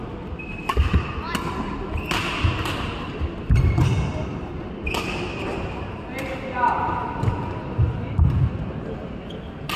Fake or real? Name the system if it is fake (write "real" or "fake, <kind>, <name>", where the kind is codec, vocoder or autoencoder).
real